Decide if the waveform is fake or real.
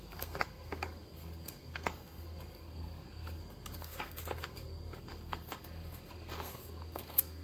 fake